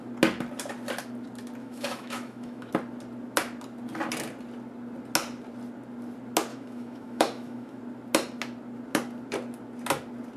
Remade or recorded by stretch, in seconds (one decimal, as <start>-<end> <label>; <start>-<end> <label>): 0.0-1.6 recorded; 1.6-2.7 remade; 2.7-6.5 recorded; 6.5-7.8 remade; 7.8-10.4 recorded